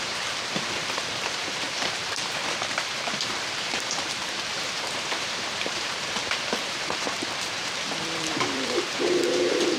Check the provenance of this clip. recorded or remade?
remade